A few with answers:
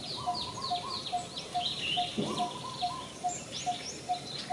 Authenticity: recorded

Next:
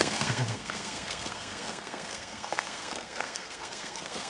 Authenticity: remade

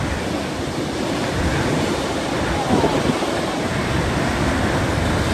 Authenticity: recorded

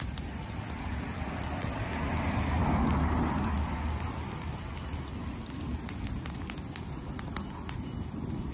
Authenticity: recorded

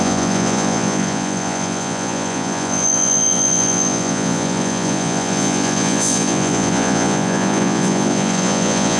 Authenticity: remade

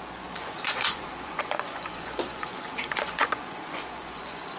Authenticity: remade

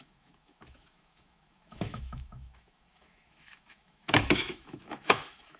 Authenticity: remade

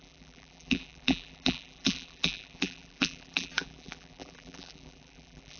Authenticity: remade